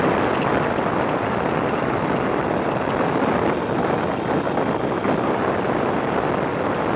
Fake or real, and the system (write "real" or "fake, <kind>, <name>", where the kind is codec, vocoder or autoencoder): real